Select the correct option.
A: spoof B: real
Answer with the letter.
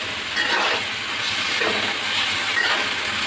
B